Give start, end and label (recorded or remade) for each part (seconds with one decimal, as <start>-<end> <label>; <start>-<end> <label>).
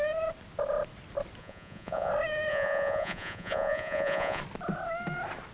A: 0.0-1.4 recorded; 1.4-2.1 remade; 2.1-2.5 recorded; 2.5-4.4 remade; 4.4-5.5 recorded